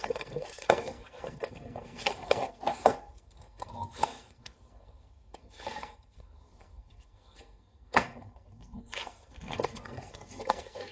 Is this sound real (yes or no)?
no